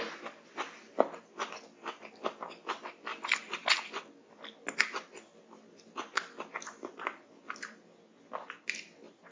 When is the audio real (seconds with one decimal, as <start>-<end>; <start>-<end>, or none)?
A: 0.0-9.3

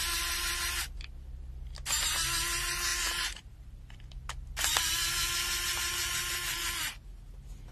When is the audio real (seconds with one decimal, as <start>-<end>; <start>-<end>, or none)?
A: 0.0-7.7

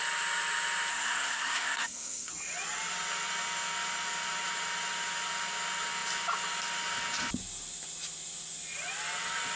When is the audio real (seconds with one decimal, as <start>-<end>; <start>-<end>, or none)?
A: 0.0-0.9; 2.3-9.6